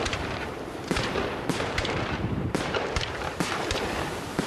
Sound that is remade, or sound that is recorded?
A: remade